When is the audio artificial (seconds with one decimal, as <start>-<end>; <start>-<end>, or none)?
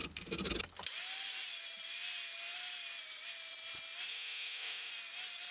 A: 4.1-4.9